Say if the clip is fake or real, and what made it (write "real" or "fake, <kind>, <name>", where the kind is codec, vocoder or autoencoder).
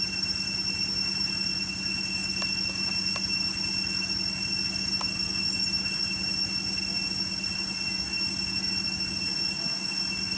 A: real